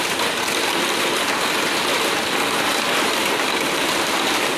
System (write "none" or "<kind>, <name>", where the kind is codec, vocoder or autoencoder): vocoder, BigVGAN v2